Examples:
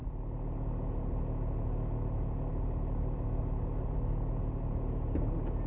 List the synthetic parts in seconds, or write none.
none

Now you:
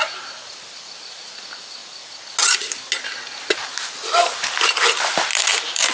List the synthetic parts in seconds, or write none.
0.0-1.8 (vocoder, BigVGAN v2); 5.3-5.9

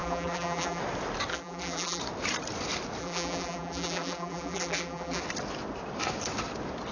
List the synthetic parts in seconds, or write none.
0.0-0.8 (vocoder, BigVGAN v2); 1.3-2.0; 3.0-5.2

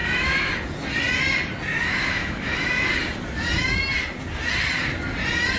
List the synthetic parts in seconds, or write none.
0.0-0.5 (autoencoder, DAC-VAE); 1.9-2.9

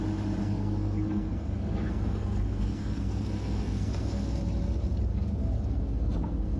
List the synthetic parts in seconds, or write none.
0.4-4.4 (codec, SNAC); 5.1-6.6

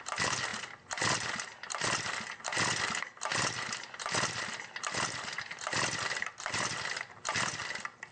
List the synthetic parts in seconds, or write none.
none

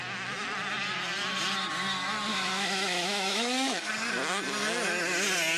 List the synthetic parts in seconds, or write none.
2.3-3.9 (autoencoder, DAC-VAE)

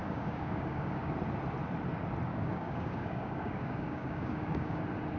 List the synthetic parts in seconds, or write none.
0.0-1.1 (codec, DAC); 2.3-4.8